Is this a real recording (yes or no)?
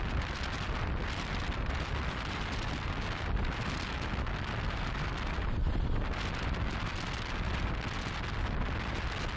yes